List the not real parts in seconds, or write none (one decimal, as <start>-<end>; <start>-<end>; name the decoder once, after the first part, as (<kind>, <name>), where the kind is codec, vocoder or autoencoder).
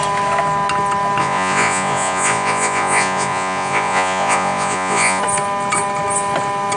1.2-5.2 (vocoder, Vocos)